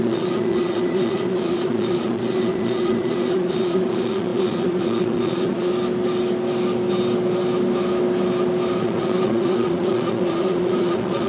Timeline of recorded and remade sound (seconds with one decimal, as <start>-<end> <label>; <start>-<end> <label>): 0.0-5.7 remade; 5.7-8.8 recorded; 8.8-11.3 remade